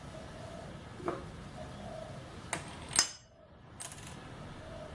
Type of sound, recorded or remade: recorded